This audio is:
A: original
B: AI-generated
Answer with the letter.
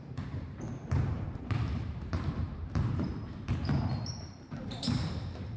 B